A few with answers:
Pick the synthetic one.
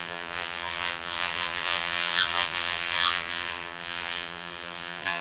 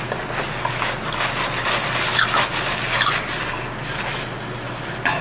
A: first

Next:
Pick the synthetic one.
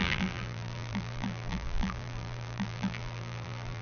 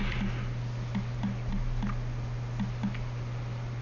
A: first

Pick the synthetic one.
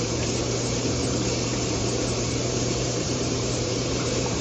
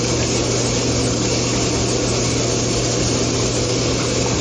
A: first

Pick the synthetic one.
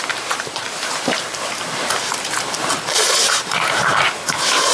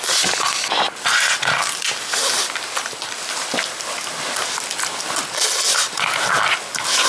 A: first